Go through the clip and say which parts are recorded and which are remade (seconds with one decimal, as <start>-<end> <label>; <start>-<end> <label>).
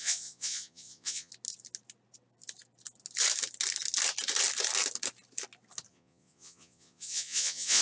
0.0-1.3 remade; 1.3-5.9 recorded; 5.9-7.8 remade